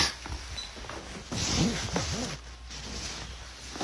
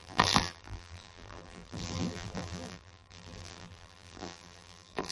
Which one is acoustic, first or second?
first